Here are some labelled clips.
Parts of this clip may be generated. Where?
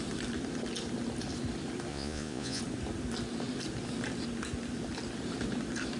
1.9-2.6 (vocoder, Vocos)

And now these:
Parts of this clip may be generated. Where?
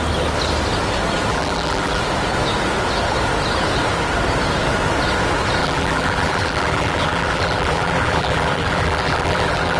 1.3-2.0 (vocoder, BigVGAN v2); 5.6-9.8